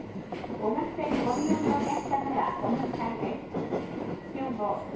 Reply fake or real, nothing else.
real